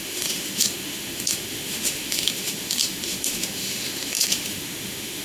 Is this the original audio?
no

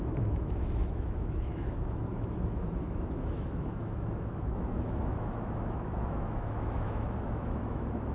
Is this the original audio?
no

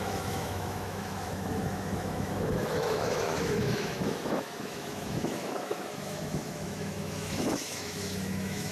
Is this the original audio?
no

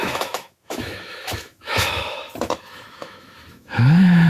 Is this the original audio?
no